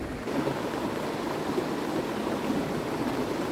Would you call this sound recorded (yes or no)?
yes